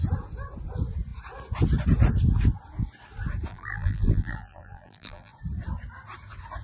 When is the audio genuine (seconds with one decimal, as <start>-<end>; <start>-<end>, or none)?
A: 0.0-3.5; 5.3-6.6